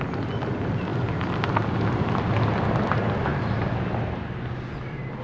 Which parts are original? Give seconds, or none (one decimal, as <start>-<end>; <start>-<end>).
0.0-5.2